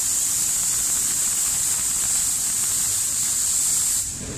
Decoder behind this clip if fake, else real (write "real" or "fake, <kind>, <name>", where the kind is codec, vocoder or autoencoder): real